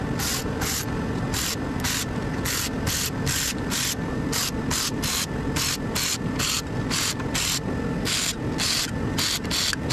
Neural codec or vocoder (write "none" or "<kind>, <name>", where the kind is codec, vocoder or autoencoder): none